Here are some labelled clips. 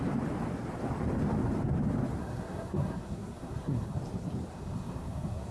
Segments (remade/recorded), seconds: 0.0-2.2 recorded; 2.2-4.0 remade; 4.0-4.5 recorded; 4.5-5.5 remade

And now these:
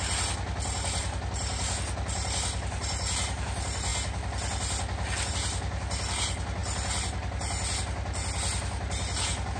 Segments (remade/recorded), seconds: 0.0-9.6 recorded

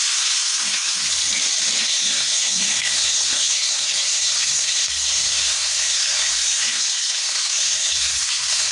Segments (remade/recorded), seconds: 0.0-1.1 remade; 1.1-1.8 recorded; 1.8-8.7 remade

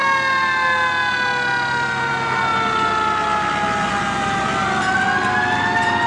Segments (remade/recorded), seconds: 0.0-6.1 recorded